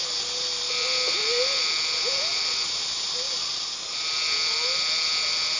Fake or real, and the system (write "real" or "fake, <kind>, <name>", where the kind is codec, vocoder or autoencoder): real